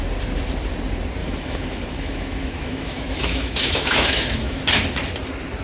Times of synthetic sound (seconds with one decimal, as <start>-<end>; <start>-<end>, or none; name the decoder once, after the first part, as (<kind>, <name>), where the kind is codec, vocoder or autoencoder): 1.2-4.6 (autoencoder, DAC-VAE)